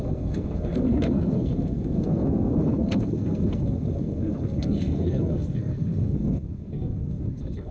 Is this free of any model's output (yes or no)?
no